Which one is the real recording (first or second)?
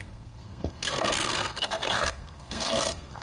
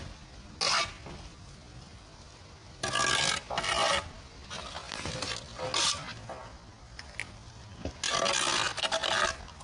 second